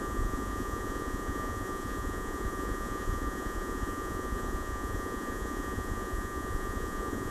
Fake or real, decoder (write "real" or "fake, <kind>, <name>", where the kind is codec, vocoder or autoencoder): fake, vocoder, Vocos